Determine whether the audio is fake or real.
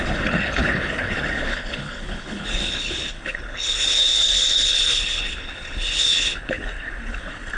fake